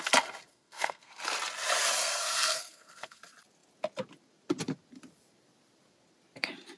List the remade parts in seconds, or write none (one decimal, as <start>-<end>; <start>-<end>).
0.5-1.2; 2.0-3.2